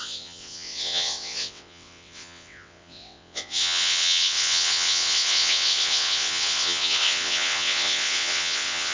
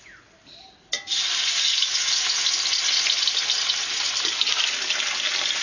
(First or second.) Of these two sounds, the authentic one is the second